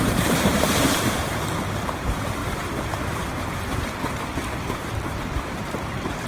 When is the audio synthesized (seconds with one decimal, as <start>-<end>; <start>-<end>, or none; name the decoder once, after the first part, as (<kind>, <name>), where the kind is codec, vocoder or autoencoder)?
0.0-2.4 (vocoder, BigVGAN v2); 5.8-6.3